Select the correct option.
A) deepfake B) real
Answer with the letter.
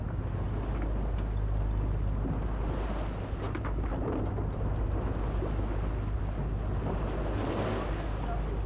B